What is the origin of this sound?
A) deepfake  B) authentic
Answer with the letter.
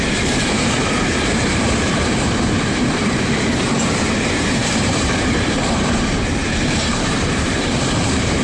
A